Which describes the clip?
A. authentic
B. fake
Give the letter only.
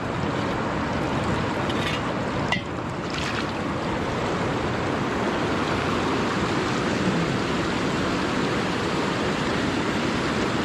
A